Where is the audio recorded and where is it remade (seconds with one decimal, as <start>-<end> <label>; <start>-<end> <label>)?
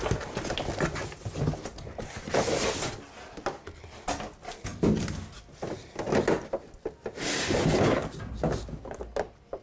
0.0-9.6 recorded